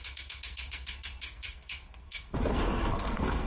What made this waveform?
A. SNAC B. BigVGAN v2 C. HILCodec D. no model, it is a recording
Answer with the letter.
A